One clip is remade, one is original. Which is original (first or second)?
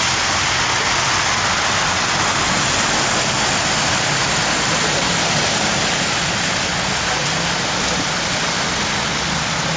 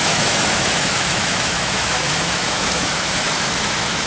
first